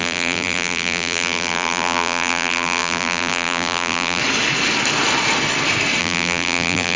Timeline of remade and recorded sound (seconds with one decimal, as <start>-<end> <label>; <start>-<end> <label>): 0.0-4.2 remade; 4.2-6.0 recorded; 6.0-7.0 remade